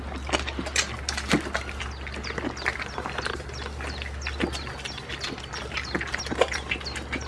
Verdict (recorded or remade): recorded